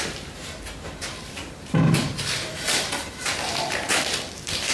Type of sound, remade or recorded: remade